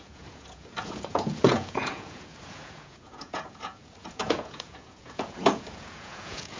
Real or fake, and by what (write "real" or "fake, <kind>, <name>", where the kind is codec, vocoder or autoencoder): fake, vocoder, Vocos